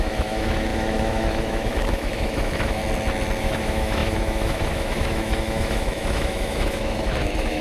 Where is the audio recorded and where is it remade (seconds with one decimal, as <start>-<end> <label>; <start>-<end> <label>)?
0.0-2.8 remade; 2.8-3.4 recorded; 3.4-7.6 remade